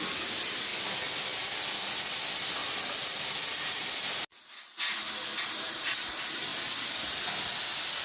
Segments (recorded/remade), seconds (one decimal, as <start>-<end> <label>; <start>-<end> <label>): 0.0-8.0 recorded